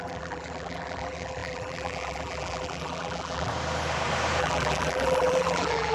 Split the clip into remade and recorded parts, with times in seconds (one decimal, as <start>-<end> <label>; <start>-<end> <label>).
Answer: 0.0-3.5 remade; 3.5-4.4 recorded; 4.4-5.9 remade